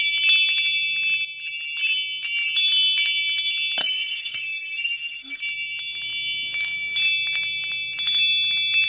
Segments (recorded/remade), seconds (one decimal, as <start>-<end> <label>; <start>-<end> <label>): 0.0-3.8 recorded; 3.8-5.4 remade; 5.4-8.9 recorded